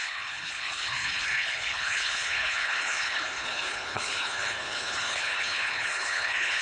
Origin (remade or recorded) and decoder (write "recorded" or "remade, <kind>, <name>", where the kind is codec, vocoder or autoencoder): remade, codec, HILCodec